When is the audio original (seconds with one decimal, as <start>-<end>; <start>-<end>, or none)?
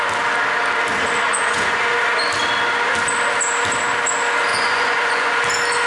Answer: 0.0-1.3; 1.8-4.5; 5.4-5.9